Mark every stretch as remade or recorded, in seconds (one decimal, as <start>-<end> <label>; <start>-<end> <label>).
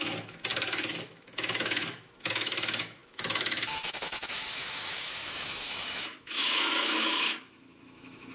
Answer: 0.0-8.3 remade